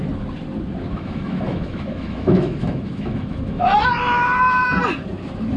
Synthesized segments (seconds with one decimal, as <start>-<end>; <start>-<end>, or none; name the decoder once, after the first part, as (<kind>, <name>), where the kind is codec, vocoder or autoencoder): 0.9-3.6 (autoencoder, DAC-VAE)